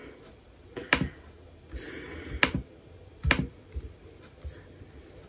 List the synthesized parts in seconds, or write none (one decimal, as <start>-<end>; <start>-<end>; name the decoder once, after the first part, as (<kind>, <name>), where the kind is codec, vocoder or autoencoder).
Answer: none